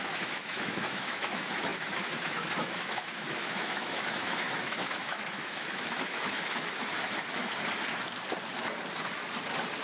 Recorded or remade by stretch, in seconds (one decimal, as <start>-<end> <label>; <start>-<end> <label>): 0.0-6.9 remade; 6.9-9.8 recorded